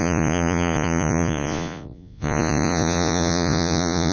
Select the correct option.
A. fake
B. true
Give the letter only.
A